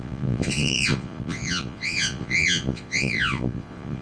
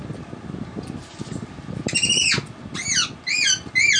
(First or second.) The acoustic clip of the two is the second